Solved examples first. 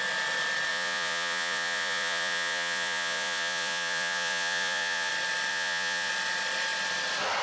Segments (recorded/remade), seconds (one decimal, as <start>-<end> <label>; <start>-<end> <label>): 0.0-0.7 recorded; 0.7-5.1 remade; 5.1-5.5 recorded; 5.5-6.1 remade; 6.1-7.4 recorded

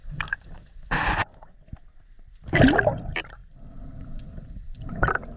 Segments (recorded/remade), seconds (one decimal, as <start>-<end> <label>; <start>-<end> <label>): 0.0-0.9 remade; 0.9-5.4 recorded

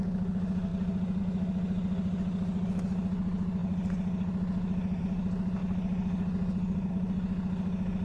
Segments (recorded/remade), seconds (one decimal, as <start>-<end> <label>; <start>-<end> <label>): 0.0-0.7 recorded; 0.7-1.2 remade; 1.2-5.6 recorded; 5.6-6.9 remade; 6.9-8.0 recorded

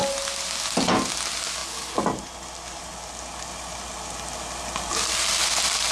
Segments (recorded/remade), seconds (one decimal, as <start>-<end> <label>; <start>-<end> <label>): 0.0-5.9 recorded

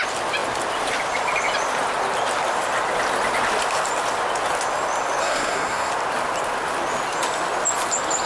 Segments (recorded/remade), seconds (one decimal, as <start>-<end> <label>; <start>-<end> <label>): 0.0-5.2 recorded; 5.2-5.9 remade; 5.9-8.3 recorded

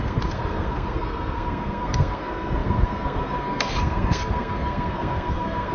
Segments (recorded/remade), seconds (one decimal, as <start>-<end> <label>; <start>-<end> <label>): 0.0-5.7 remade